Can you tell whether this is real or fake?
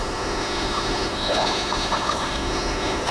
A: fake